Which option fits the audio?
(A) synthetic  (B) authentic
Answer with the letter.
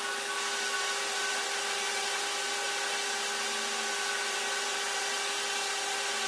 B